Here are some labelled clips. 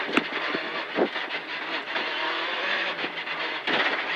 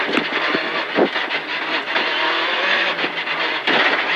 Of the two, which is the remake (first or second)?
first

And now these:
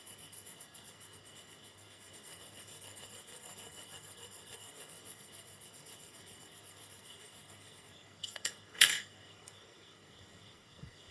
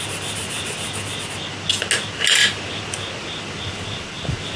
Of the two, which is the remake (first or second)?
first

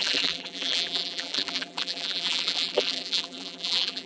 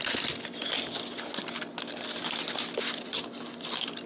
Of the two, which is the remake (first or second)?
first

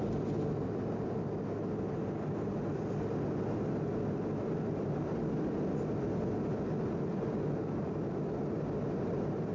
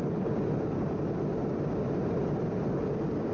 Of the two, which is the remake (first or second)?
second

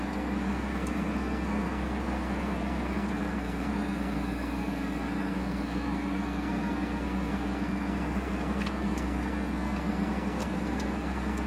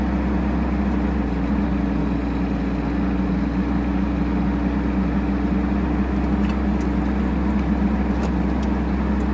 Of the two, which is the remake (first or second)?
first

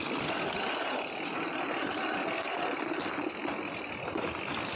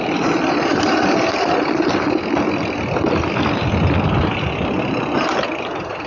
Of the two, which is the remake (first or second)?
second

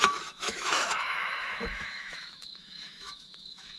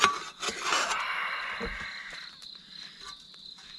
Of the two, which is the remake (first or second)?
first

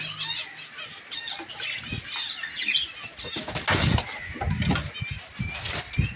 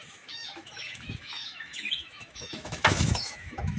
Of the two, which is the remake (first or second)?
second